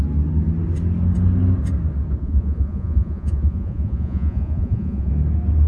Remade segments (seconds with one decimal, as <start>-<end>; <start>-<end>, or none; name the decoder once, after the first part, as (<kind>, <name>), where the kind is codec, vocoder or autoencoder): 2.2-5.1 (vocoder, Vocos)